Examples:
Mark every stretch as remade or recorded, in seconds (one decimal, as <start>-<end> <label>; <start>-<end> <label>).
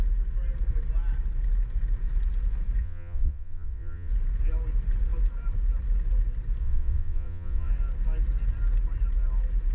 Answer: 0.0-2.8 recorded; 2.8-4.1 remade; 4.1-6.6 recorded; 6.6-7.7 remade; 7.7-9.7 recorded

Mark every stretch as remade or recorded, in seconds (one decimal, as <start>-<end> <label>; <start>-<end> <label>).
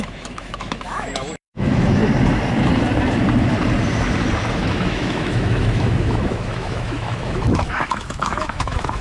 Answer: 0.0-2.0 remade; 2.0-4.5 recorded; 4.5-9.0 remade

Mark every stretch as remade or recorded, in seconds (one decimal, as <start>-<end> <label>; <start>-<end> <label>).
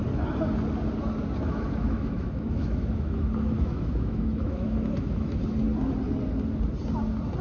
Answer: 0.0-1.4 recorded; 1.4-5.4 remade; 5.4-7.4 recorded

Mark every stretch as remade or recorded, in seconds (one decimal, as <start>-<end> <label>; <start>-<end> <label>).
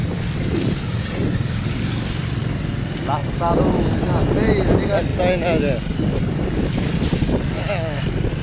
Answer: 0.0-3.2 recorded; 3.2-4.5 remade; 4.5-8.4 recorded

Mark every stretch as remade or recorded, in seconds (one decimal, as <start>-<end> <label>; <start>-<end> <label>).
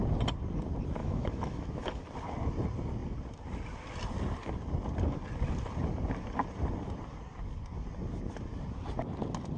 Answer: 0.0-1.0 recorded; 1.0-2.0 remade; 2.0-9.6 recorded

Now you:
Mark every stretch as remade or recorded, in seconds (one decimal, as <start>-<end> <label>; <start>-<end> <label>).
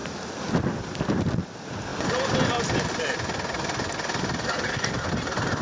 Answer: 0.0-5.6 recorded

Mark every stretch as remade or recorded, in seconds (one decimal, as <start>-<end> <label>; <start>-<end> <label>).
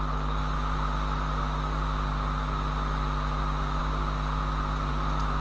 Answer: 0.0-5.4 recorded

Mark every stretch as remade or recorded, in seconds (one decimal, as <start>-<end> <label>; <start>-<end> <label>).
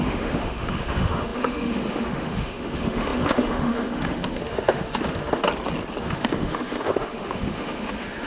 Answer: 0.0-5.4 remade; 5.4-6.0 recorded; 6.0-8.3 remade